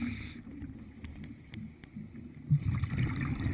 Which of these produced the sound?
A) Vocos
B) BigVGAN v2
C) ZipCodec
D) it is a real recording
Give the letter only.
D